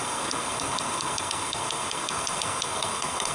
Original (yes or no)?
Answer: no